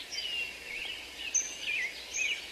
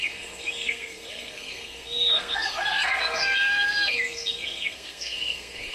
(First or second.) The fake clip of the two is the second